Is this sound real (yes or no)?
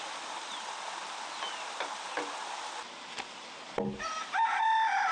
yes